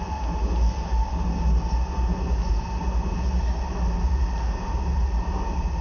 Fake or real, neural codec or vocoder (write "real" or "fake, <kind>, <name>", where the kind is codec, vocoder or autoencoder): real